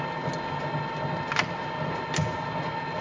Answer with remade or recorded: recorded